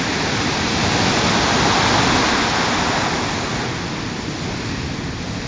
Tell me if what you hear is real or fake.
real